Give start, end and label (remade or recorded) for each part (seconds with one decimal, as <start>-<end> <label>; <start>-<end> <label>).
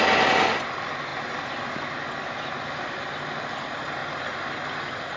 0.0-5.2 recorded